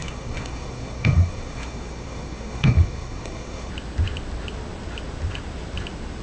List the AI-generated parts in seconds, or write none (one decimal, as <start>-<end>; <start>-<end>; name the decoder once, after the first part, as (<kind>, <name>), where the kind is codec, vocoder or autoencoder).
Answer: 0.0-3.7 (codec, SNAC)